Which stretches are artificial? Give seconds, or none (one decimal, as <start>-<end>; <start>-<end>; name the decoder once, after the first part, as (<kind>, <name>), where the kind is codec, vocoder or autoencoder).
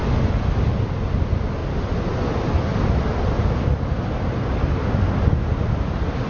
none